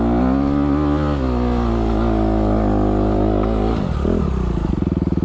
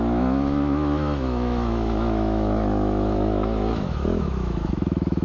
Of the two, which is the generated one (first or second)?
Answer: second